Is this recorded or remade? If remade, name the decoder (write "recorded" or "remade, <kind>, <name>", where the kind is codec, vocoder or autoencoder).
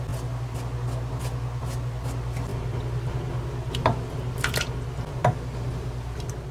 recorded